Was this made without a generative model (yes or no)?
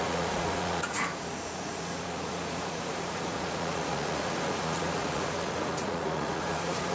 no